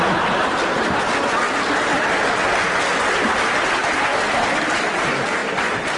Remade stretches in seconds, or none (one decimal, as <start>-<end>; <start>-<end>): none